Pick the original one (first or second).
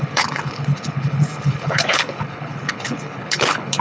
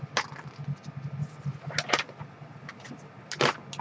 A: second